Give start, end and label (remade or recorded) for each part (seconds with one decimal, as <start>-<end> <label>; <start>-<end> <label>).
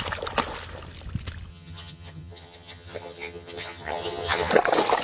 0.0-1.5 recorded; 1.5-4.5 remade; 4.5-5.0 recorded